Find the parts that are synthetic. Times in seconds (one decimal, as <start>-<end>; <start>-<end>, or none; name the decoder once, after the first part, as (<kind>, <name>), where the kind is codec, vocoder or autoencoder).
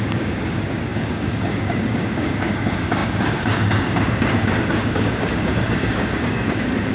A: 0.0-6.9 (codec, DAC)